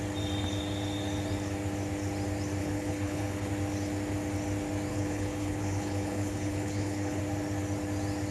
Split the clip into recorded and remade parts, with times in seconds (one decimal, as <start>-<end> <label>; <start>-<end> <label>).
0.0-2.6 recorded; 2.6-3.5 remade; 3.5-4.9 recorded; 4.9-7.2 remade; 7.2-8.3 recorded